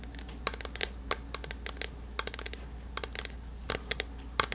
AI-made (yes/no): no